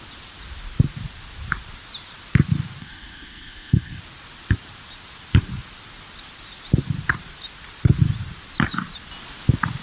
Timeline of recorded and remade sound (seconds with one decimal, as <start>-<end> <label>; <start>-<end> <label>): 0.0-2.8 recorded; 2.8-4.0 remade; 4.0-9.8 recorded